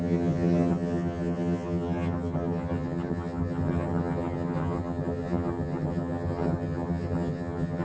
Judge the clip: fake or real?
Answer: fake